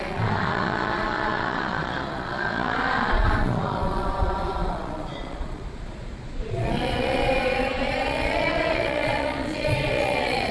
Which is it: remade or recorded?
remade